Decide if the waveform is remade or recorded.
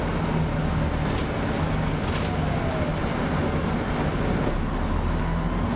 recorded